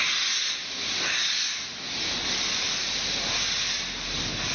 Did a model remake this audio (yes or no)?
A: no